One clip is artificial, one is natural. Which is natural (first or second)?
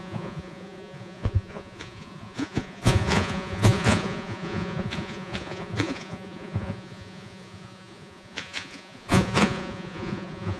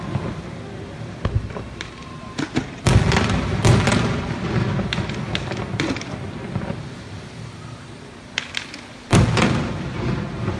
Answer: second